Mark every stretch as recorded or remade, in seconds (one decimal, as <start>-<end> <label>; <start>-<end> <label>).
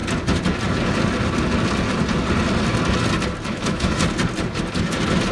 0.0-3.5 recorded; 3.5-4.0 remade; 4.0-5.3 recorded